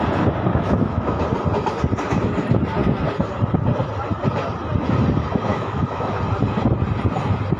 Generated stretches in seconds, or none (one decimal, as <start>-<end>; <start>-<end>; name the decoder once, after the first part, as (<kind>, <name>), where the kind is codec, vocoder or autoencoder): 0.5-1.2 (autoencoder, DAC-VAE); 5.5-6.2

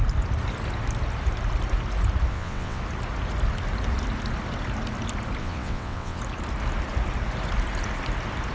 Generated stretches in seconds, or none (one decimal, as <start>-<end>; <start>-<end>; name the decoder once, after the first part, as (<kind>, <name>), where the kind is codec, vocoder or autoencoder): 2.3-2.8 (vocoder, WaveNeXt); 5.4-6.2

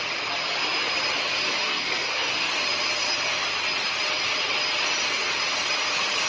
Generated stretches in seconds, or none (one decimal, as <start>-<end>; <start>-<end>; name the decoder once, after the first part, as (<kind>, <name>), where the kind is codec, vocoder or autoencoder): 1.6-2.5 (codec, SNAC)

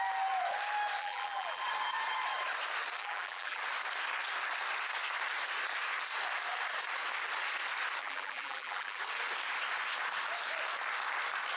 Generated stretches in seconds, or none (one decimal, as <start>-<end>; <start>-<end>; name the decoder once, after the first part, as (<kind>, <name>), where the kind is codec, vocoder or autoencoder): 1.0-1.6 (vocoder, BigVGAN v2); 3.0-3.6; 8.0-9.0

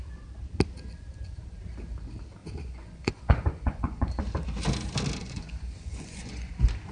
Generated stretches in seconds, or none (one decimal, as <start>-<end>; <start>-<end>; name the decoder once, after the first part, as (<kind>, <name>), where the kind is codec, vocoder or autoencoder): 2.4-4.2 (vocoder, Vocos); 5.2-6.5

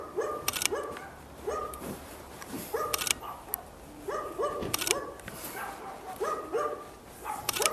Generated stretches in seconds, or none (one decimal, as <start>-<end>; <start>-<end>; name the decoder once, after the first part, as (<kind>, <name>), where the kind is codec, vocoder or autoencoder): 0.0-0.5 (vocoder, BigVGAN v2); 1.1-2.9; 7.0-7.7

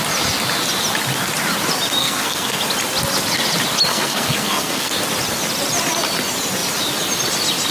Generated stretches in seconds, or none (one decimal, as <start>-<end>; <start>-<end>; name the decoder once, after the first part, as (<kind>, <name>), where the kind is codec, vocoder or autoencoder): 2.0-2.6 (codec, SNAC); 3.9-4.9

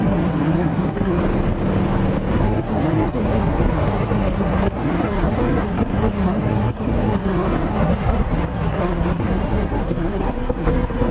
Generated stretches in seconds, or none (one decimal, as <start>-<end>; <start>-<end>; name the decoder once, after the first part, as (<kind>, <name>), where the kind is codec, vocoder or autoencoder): 0.0-1.2 (codec, SNAC); 2.3-11.1